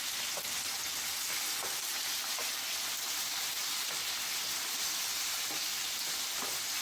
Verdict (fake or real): real